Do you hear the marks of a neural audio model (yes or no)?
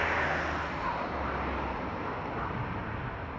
no